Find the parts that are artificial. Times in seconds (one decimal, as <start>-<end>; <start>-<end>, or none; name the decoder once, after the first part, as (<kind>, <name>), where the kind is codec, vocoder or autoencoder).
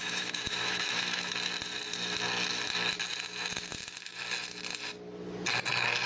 0.0-1.3 (autoencoder, DAC-VAE)